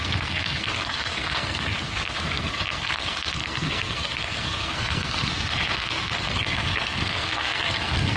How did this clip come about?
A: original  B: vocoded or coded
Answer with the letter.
B